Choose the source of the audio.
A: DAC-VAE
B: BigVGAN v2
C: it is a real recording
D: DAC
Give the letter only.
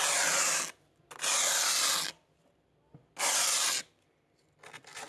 C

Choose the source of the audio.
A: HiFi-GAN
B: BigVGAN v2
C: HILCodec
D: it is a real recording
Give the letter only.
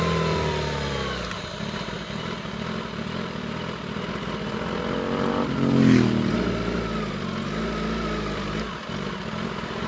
D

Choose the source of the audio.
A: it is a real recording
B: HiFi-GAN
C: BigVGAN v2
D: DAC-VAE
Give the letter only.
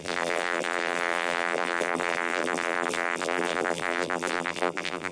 C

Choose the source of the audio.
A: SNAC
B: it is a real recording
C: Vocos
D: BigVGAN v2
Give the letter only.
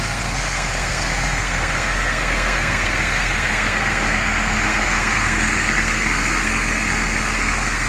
A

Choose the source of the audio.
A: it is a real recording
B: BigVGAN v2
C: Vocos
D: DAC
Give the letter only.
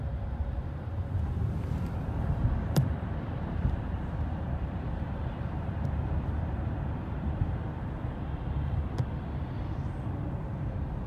B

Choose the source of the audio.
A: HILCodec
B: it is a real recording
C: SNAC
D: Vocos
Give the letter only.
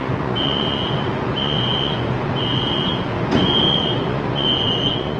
D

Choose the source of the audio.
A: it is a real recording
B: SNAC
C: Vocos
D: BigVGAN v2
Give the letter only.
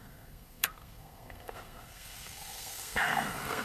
B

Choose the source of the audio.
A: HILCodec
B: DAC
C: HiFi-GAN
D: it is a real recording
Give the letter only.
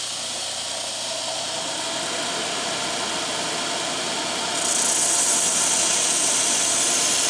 D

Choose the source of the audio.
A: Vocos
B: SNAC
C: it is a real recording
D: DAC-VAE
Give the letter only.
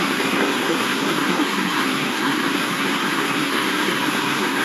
B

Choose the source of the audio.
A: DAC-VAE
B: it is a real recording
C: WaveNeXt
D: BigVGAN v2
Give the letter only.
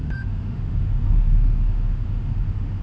A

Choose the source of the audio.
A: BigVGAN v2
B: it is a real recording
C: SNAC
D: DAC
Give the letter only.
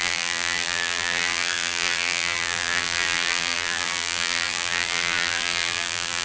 A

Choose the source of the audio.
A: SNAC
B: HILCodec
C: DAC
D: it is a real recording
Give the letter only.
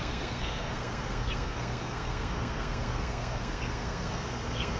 A